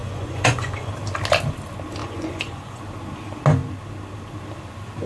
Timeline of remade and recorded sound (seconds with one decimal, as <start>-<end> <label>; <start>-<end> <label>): 0.0-0.9 remade; 0.9-2.0 recorded; 2.0-2.8 remade; 2.8-5.1 recorded